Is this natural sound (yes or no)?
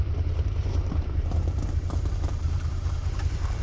no